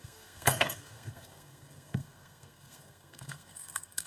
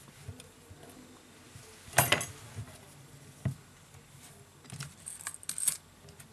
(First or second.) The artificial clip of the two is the first